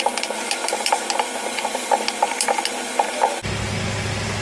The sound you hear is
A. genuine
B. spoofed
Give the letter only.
A